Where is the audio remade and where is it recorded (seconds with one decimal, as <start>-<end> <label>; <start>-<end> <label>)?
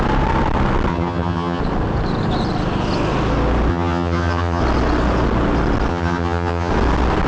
0.0-0.9 recorded; 0.9-1.6 remade; 1.6-3.7 recorded; 3.7-4.6 remade; 4.6-5.9 recorded; 5.9-6.7 remade; 6.7-7.3 recorded